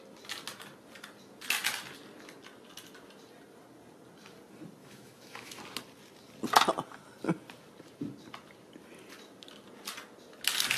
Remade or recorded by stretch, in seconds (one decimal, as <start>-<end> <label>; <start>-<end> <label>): 0.0-4.8 recorded; 4.8-5.6 remade; 5.6-10.8 recorded